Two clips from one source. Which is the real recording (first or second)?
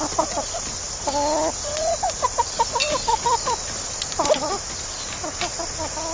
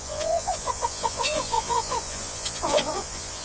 first